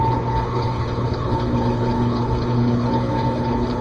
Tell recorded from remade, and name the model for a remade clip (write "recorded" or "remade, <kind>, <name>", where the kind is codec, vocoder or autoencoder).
remade, codec, HILCodec